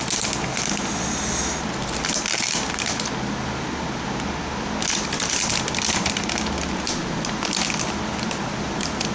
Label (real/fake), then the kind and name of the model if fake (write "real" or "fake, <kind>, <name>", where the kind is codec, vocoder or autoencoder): real